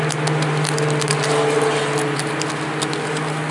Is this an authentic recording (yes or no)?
yes